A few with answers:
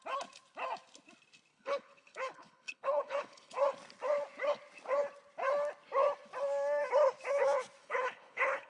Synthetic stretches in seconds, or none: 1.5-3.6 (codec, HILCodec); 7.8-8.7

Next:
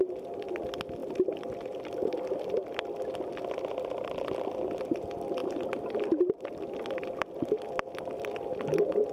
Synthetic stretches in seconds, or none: 1.0-2.2 (vocoder, BigVGAN v2)

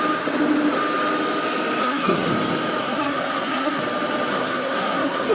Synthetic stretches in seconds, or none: 1.8-2.3 (codec, SNAC); 2.8-3.8; 4.3-5.3